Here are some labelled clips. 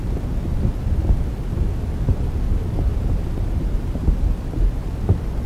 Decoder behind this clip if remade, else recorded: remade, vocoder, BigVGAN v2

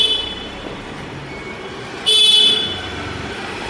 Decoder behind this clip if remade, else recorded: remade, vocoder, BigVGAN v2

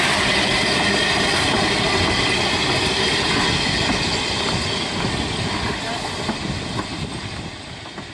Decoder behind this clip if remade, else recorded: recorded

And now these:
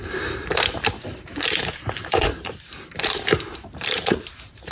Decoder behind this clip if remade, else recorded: remade, vocoder, BigVGAN v2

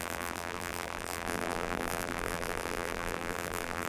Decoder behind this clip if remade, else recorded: remade, vocoder, BigVGAN v2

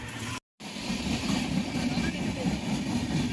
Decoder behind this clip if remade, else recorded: recorded